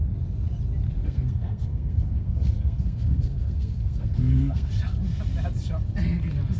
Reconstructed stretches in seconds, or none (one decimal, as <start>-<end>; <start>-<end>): 1.0-4.7